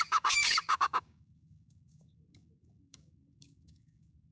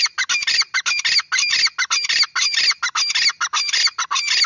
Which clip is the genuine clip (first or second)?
second